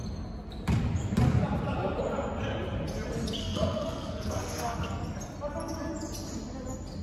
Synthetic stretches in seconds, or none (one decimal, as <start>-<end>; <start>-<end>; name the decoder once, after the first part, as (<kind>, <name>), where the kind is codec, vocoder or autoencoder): 3.4-5.0 (codec, SNAC)